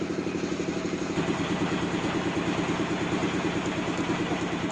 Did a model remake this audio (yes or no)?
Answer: yes